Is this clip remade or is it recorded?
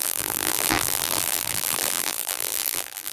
remade